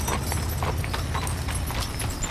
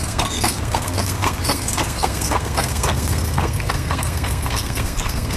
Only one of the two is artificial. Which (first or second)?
second